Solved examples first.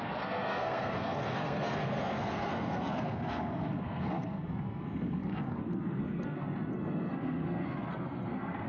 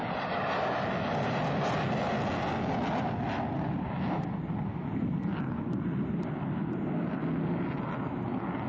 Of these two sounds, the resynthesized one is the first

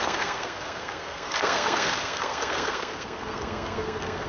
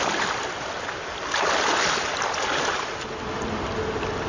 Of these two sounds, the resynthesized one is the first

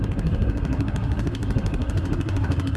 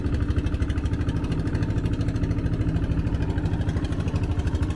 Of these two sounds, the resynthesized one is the first